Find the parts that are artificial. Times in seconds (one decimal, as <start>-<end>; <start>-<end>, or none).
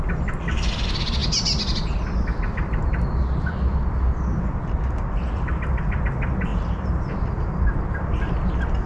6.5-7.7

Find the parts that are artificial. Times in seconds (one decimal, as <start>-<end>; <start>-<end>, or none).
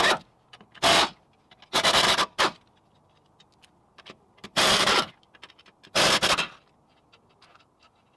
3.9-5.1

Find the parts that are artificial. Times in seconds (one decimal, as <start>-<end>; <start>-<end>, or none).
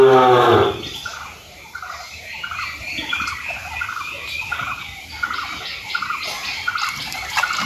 1.1-3.4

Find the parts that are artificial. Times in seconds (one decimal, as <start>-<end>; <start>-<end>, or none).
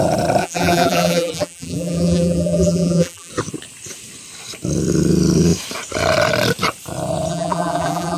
0.4-3.3; 7.3-8.2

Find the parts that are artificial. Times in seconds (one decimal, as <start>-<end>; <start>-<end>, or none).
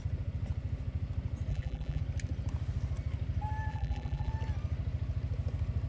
1.5-2.0; 3.7-4.3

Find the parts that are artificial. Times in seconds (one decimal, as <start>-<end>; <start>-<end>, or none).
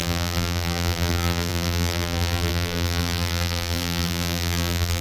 0.0-5.0